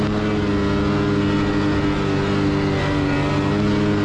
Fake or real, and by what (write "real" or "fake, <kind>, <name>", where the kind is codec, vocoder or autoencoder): real